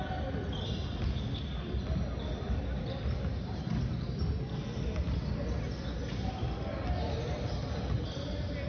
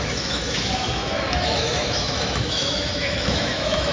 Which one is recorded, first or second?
first